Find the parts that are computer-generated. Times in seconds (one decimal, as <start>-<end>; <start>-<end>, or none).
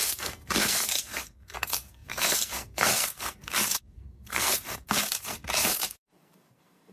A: 0.0-6.9